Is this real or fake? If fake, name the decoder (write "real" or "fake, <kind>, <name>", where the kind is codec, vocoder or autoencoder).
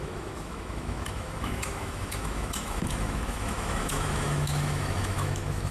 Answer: fake, autoencoder, DAC-VAE